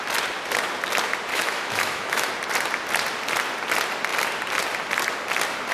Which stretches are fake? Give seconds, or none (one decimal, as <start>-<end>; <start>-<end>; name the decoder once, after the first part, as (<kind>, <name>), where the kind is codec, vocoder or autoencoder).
1.3-2.3 (autoencoder, DAC-VAE)

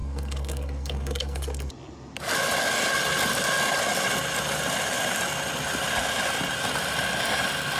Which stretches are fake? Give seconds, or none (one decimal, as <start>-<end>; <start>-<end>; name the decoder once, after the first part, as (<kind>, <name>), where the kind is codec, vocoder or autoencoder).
0.0-1.7 (codec, SNAC)

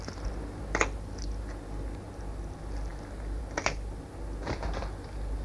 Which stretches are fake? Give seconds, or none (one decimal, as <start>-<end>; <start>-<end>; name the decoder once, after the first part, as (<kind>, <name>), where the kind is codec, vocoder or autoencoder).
none